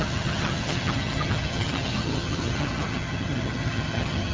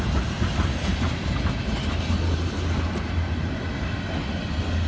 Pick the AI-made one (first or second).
first